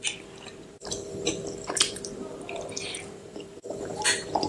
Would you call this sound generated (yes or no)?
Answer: yes